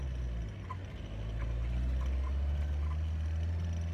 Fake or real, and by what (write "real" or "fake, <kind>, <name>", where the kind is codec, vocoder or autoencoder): real